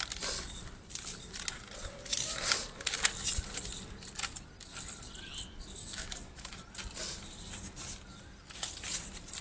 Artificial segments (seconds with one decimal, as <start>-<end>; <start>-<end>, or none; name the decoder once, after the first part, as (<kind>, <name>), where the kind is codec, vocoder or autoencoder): 5.8-6.5 (autoencoder, DAC-VAE)